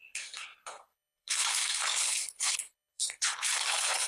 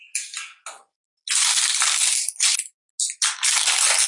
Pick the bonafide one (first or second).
second